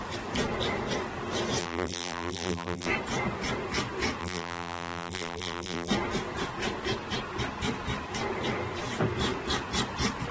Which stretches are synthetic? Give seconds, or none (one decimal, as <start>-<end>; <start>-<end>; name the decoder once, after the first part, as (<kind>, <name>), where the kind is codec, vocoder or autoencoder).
1.6-2.9 (vocoder, BigVGAN v2); 4.2-5.9